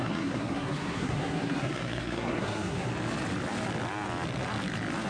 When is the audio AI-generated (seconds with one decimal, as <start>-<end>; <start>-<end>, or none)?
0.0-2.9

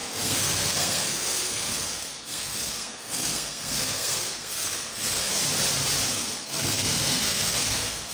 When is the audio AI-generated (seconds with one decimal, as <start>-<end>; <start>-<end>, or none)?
0.0-5.4; 6.1-8.1

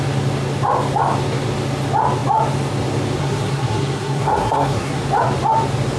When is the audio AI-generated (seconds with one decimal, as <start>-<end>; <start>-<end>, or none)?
3.2-5.0

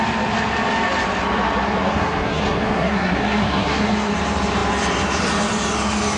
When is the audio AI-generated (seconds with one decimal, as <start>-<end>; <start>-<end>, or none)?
1.9-4.1

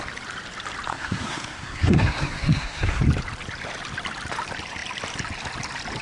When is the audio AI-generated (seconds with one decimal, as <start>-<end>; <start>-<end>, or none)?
0.9-3.0

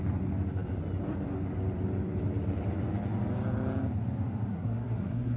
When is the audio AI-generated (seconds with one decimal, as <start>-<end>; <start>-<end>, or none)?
4.5-5.4

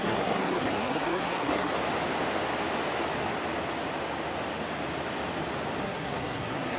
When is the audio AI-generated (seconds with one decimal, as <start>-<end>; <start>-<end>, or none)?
0.0-1.7; 5.8-6.8

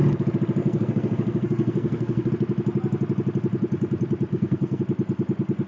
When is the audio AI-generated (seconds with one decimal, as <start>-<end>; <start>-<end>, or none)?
0.6-2.3; 4.3-4.8